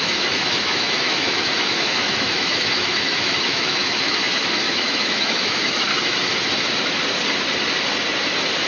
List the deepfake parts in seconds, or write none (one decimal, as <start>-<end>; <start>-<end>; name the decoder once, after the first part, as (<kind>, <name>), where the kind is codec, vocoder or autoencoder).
0.0-5.9 (autoencoder, DAC-VAE)